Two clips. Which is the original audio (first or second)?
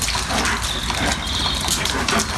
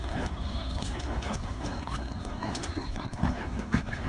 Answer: first